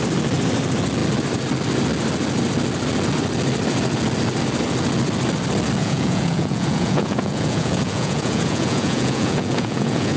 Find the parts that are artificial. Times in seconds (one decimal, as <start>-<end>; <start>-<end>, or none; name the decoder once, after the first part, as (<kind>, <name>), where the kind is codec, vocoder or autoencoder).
5.8-10.2 (vocoder, Vocos)